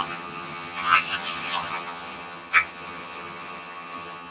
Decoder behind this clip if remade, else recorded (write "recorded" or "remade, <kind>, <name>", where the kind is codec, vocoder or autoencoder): remade, vocoder, HiFi-GAN